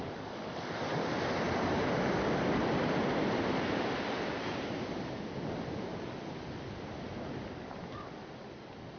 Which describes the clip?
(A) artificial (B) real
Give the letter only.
B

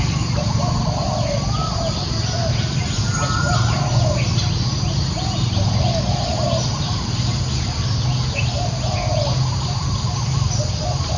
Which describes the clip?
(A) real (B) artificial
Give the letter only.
A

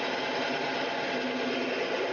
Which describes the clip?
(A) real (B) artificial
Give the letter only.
A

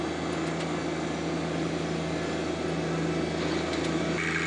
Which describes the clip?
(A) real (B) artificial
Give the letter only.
A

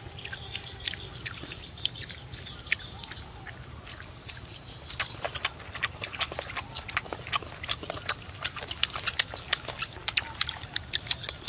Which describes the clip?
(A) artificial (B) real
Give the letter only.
B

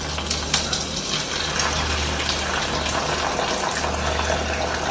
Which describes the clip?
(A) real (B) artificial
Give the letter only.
A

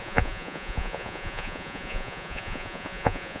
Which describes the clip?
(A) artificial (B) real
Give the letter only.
A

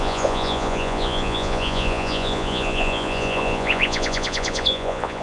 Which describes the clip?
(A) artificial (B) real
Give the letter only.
A